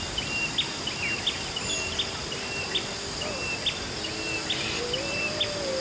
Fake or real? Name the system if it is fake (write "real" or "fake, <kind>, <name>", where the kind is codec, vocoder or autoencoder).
real